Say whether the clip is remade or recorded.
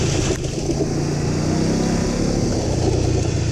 recorded